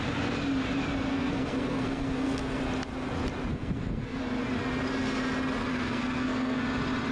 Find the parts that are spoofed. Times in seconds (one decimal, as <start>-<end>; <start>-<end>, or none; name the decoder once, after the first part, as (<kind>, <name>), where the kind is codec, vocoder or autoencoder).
1.1-2.6 (codec, SNAC); 3.5-4.2; 5.7-6.6